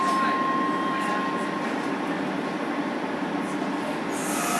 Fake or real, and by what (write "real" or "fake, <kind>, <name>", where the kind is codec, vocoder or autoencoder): real